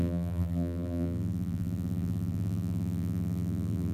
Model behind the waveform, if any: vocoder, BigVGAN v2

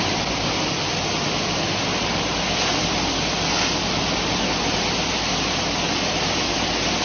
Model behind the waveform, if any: none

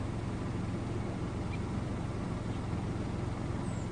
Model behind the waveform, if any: none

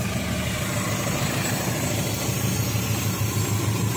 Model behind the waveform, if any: none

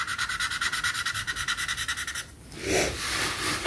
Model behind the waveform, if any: none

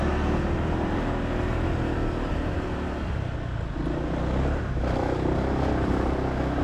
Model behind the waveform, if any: none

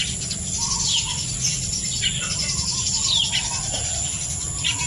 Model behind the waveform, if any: none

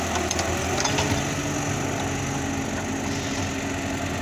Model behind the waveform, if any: none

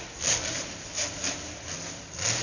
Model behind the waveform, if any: none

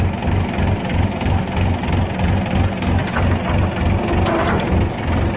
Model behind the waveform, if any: none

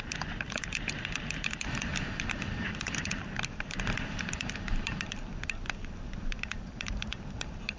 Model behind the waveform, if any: vocoder, BigVGAN v2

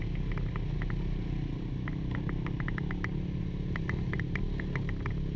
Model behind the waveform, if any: none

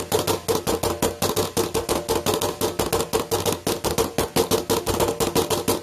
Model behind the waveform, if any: none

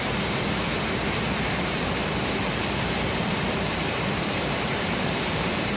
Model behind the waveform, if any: vocoder, BigVGAN v2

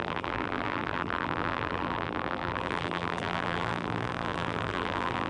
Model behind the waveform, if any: vocoder, BigVGAN v2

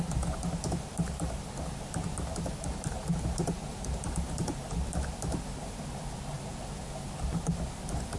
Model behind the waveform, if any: none